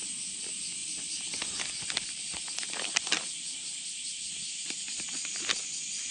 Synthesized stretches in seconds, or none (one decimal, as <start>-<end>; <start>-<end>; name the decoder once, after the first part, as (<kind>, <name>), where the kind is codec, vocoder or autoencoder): 0.8-4.2 (vocoder, BigVGAN v2); 4.9-5.6